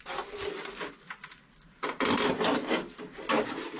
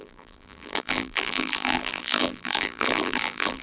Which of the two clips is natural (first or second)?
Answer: first